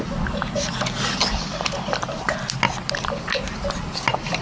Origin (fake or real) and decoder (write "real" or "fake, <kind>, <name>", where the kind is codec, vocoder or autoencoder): real